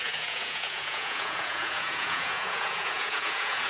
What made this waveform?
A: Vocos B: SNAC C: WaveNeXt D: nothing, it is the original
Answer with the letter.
A